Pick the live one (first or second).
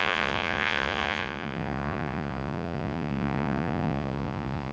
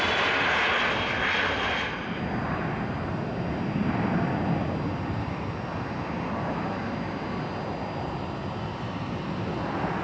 second